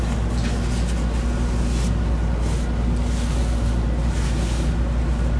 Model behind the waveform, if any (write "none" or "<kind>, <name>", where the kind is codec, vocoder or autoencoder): none